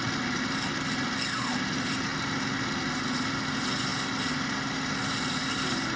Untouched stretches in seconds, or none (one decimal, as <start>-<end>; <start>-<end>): 0.0-6.0